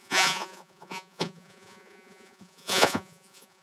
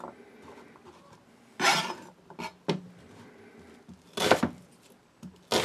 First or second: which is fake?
first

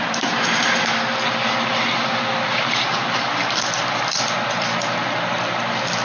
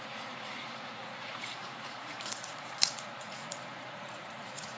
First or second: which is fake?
second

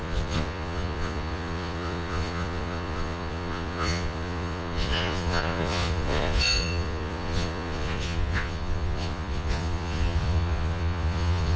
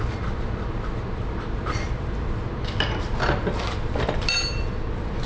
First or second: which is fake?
first